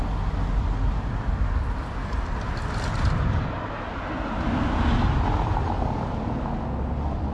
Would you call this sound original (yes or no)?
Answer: yes